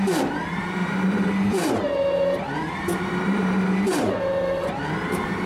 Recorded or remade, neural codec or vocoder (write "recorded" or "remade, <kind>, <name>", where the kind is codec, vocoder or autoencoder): remade, vocoder, BigVGAN v2